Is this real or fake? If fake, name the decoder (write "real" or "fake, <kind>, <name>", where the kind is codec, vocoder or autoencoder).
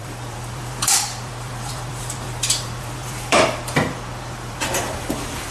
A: fake, vocoder, BigVGAN v2